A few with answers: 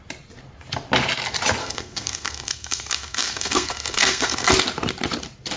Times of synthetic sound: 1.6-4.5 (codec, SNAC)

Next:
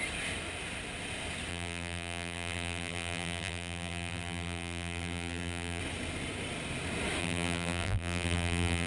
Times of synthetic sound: 1.5-5.8 (vocoder, BigVGAN v2); 7.2-8.9

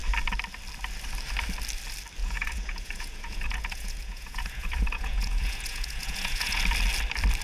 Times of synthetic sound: 2.2-6.6 (vocoder, Vocos)

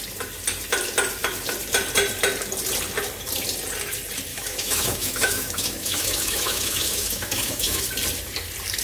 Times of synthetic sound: 4.3-7.8 (autoencoder, DAC-VAE)